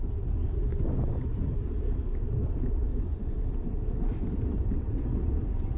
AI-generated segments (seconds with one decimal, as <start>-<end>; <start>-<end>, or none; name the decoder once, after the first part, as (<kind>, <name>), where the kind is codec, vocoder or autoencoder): 0.7-1.5 (vocoder, Vocos); 2.9-3.4